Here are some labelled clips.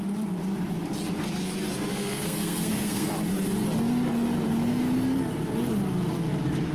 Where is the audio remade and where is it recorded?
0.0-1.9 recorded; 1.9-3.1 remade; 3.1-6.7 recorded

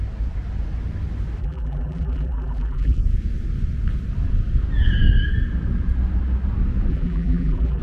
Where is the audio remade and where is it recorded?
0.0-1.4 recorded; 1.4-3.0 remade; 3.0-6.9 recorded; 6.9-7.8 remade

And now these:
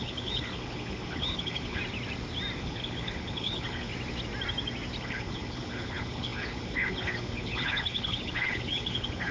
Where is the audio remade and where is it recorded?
0.0-1.8 remade; 1.8-2.6 recorded; 2.6-3.9 remade; 3.9-5.0 recorded; 5.0-9.3 remade

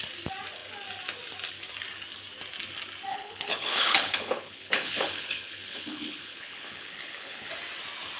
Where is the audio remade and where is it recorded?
0.0-3.1 recorded; 3.1-7.5 remade; 7.5-8.2 recorded

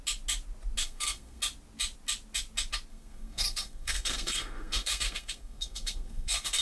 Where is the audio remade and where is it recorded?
0.0-0.8 recorded; 0.8-1.4 remade; 1.4-2.9 recorded; 2.9-6.6 remade

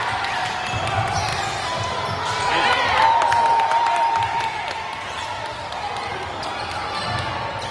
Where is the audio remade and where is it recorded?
0.0-1.3 recorded; 1.3-4.4 remade; 4.4-7.7 recorded

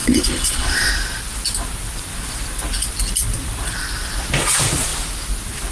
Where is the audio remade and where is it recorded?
0.0-0.9 remade; 0.9-5.7 recorded

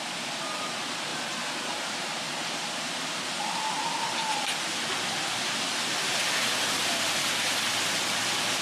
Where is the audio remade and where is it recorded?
0.0-8.6 recorded